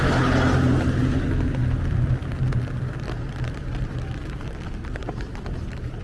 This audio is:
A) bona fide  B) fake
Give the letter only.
A